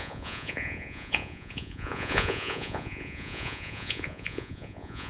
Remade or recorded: remade